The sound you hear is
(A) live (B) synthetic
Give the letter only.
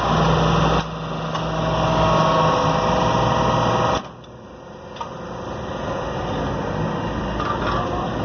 A